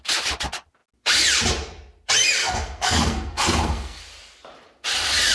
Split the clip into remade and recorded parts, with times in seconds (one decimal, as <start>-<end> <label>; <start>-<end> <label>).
0.0-2.4 recorded; 2.4-4.0 remade; 4.0-5.3 recorded